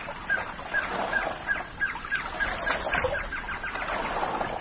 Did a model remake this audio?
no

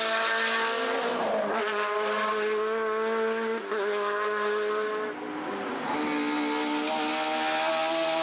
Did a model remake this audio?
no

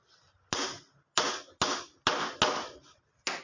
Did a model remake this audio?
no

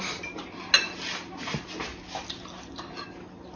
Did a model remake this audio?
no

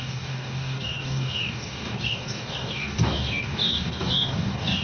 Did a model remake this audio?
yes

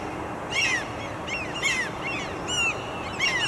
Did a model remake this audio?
no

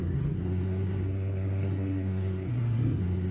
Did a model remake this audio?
yes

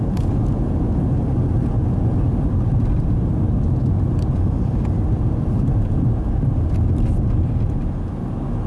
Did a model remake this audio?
no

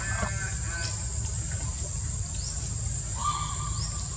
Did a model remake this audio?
no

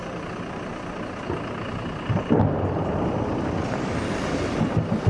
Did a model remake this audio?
no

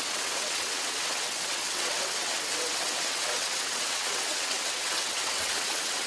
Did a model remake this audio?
yes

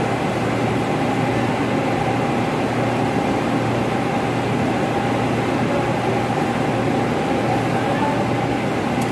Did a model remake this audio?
no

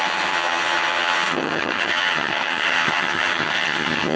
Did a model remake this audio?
yes